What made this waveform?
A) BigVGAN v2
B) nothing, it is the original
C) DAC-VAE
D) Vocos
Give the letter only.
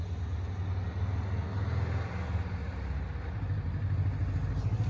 B